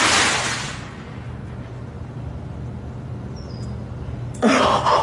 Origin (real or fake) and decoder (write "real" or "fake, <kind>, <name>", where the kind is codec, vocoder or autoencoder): real